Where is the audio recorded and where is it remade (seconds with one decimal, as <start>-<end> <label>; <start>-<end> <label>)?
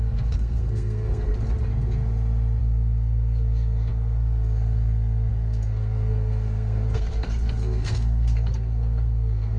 0.0-1.3 remade; 1.3-2.6 recorded; 2.6-9.6 remade